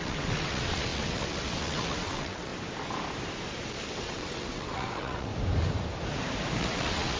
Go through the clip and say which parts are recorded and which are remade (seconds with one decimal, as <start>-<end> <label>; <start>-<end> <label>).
0.0-2.5 remade; 2.5-3.9 recorded; 3.9-5.3 remade; 5.3-6.6 recorded; 6.6-7.2 remade

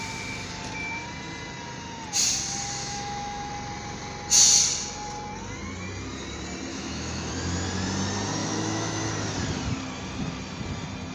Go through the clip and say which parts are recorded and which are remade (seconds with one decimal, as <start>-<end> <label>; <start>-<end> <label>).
0.0-2.8 recorded; 2.8-3.5 remade; 3.5-6.7 recorded; 6.7-7.3 remade; 7.3-8.4 recorded; 8.4-9.1 remade; 9.1-11.1 recorded